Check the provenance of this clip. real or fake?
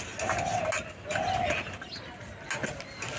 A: real